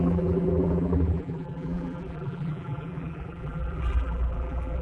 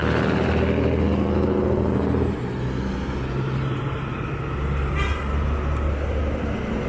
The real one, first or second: second